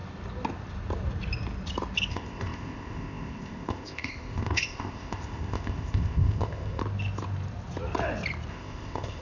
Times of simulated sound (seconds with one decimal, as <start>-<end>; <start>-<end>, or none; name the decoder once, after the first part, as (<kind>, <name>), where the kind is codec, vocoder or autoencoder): 2.1-6.8 (codec, ZipCodec); 8.5-9.2